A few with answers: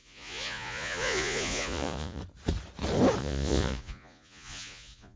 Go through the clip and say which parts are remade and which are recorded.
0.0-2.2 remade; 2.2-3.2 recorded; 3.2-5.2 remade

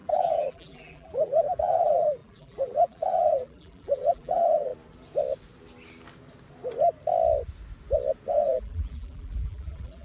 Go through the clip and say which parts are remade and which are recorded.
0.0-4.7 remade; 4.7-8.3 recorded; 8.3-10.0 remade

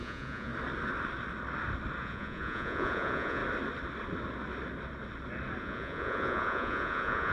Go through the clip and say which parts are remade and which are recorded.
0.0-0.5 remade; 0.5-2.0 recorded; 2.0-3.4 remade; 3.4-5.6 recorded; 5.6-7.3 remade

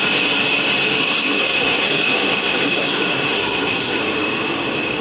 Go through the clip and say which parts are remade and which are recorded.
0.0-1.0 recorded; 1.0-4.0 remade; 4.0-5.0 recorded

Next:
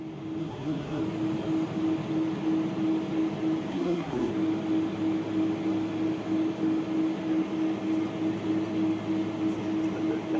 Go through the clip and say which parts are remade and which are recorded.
0.0-0.4 recorded; 0.4-1.0 remade; 1.0-3.7 recorded; 3.7-4.3 remade; 4.3-10.4 recorded

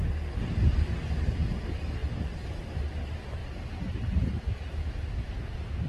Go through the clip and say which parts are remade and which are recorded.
0.0-5.9 recorded

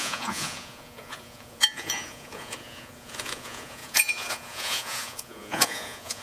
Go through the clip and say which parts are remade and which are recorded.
0.0-6.2 remade